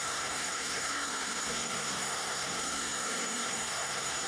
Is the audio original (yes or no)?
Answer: no